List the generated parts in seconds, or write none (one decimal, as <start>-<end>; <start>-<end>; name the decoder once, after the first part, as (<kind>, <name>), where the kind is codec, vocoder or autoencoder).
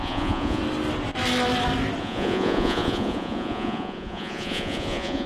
0.0-0.6 (vocoder, Vocos); 2.0-5.3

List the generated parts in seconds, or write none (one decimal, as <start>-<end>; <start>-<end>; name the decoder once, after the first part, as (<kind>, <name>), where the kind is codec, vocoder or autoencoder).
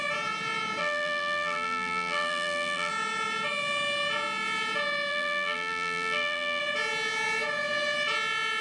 0.8-2.9 (vocoder, BigVGAN v2); 5.1-6.6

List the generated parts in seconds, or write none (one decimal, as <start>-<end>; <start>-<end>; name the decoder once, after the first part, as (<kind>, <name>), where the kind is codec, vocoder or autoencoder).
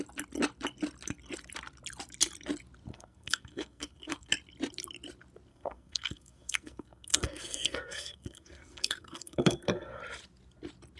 2.9-4.3 (codec, SNAC); 5.5-10.0